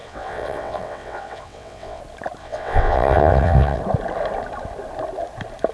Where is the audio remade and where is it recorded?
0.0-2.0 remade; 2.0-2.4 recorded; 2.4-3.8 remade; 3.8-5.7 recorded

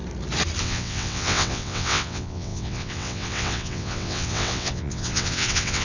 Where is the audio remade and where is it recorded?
0.0-0.6 recorded; 0.6-5.8 remade

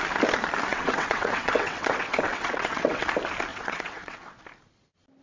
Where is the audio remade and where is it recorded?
0.0-0.7 recorded; 0.7-3.0 remade; 3.0-3.5 recorded; 3.5-4.4 remade; 4.4-5.2 recorded

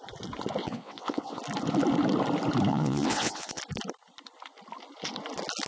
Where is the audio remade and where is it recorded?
0.0-0.6 recorded; 0.6-1.4 remade; 1.4-2.7 recorded; 2.7-3.6 remade; 3.6-5.7 recorded

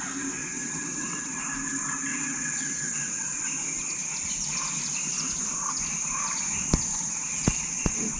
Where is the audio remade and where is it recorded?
0.0-0.4 recorded; 0.4-1.4 remade; 1.4-2.1 recorded; 2.1-3.4 remade; 3.4-6.9 recorded; 6.9-8.2 remade

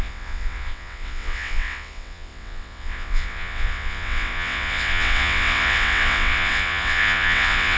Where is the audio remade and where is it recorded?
0.0-7.8 remade

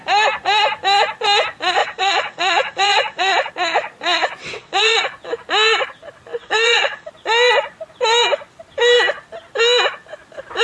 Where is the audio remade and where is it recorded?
0.0-1.8 recorded; 1.8-3.5 remade; 3.5-4.4 recorded; 4.4-5.0 remade; 5.0-6.4 recorded; 6.4-7.1 remade; 7.1-10.6 recorded

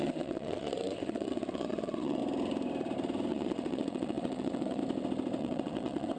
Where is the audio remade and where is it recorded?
0.0-2.2 remade; 2.2-3.3 recorded; 3.3-4.8 remade; 4.8-5.4 recorded; 5.4-6.2 remade